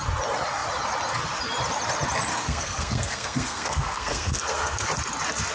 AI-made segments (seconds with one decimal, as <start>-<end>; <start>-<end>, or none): 2.3-4.9